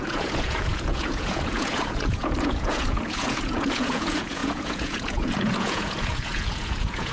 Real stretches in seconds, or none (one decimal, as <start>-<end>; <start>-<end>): none